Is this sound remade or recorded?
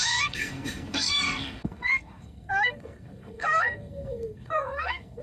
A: remade